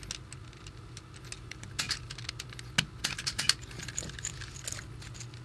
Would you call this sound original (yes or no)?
yes